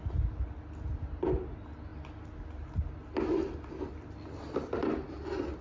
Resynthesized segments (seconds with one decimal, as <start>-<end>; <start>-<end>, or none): none